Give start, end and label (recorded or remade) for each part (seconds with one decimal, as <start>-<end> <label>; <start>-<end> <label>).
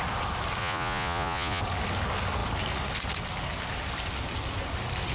0.0-0.6 recorded; 0.6-1.6 remade; 1.6-5.1 recorded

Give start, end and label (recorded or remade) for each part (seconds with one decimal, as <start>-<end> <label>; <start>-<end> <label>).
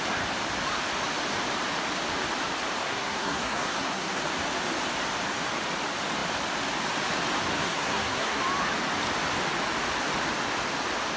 0.0-2.8 recorded; 2.8-4.2 remade; 4.2-7.6 recorded; 7.6-8.4 remade; 8.4-11.2 recorded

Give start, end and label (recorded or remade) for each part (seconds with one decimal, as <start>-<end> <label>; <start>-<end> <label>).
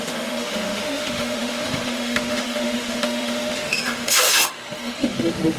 0.0-5.6 remade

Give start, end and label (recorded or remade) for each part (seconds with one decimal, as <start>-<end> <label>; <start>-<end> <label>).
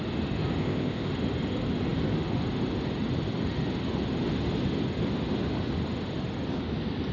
0.0-0.6 recorded; 0.6-1.1 remade; 1.1-7.1 recorded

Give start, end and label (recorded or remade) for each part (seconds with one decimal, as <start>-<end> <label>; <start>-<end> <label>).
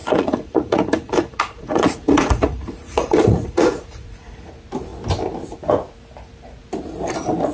0.0-4.5 remade; 4.5-7.5 recorded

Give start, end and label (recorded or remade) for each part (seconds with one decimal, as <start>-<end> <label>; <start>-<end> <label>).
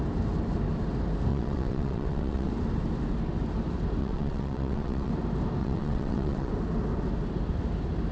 0.0-1.3 recorded; 1.3-2.5 remade; 2.5-4.0 recorded; 4.0-5.1 remade; 5.1-5.6 recorded; 5.6-6.5 remade; 6.5-8.1 recorded